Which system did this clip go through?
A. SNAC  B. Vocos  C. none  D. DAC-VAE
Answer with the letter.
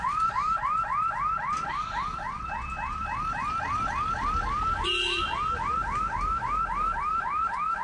C